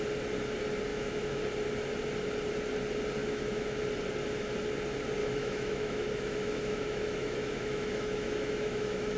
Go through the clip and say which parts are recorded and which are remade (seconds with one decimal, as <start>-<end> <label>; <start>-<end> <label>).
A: 0.0-0.9 recorded; 0.9-1.4 remade; 1.4-3.2 recorded; 3.2-3.8 remade; 3.8-5.2 recorded; 5.2-9.2 remade